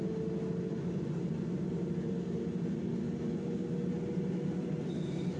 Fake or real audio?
real